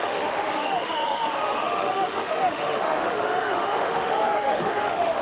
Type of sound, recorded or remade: remade